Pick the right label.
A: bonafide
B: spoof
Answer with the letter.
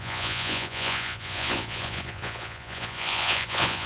B